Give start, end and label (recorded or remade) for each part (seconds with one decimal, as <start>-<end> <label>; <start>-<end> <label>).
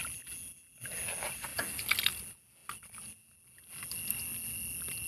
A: 0.0-5.1 recorded